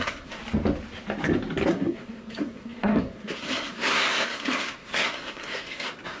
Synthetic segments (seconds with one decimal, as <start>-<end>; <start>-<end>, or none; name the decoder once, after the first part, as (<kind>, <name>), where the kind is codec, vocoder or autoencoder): 0.0-0.4 (codec, SNAC); 1.7-6.2